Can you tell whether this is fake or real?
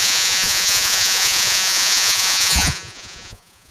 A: fake